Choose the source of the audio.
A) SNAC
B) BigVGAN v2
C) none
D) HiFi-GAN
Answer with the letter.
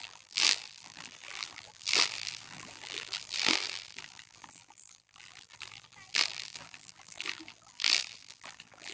B